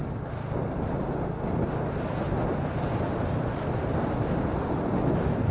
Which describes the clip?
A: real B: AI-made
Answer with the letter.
A